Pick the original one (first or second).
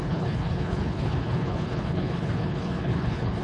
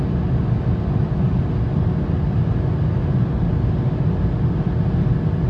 second